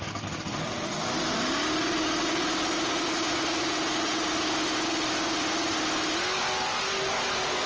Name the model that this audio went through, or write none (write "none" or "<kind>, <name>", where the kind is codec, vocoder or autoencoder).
none